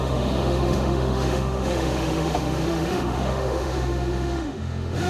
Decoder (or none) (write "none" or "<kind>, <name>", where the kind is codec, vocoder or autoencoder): autoencoder, DAC-VAE